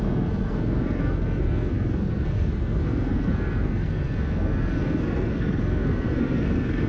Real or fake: fake